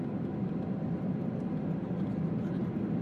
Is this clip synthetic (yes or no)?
yes